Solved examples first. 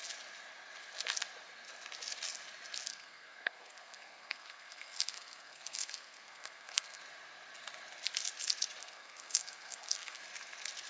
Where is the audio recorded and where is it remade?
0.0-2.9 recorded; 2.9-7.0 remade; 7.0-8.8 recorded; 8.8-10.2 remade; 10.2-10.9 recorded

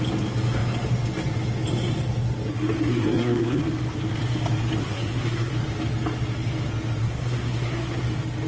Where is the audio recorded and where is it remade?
0.0-2.9 recorded; 2.9-3.6 remade; 3.6-4.8 recorded; 4.8-5.5 remade; 5.5-7.0 recorded; 7.0-8.0 remade; 8.0-8.5 recorded

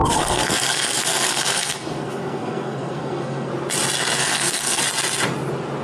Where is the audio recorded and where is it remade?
0.0-3.5 remade; 3.5-4.2 recorded; 4.2-4.8 remade; 4.8-5.8 recorded

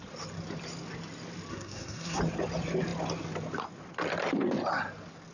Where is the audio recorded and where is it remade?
0.0-1.5 recorded; 1.5-2.2 remade; 2.2-5.3 recorded